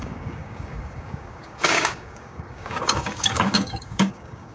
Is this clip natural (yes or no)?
no